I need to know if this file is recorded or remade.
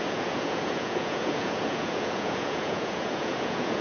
remade